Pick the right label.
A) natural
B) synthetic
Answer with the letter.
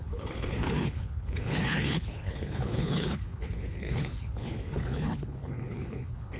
B